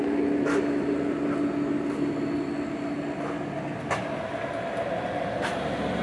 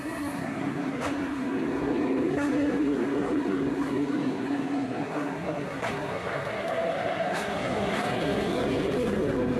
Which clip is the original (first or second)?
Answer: first